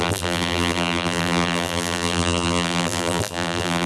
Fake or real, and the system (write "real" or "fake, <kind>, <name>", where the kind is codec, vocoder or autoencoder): fake, vocoder, BigVGAN v2